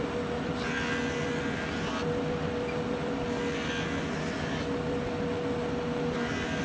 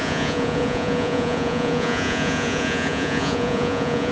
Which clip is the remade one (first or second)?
second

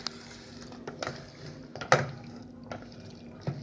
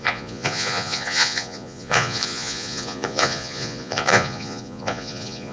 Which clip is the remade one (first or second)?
second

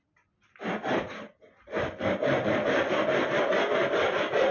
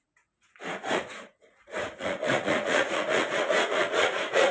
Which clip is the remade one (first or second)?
second